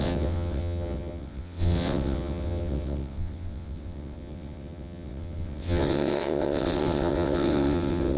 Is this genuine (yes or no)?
no